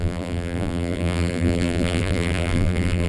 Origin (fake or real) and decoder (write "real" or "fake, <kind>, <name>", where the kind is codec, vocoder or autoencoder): fake, vocoder, BigVGAN v2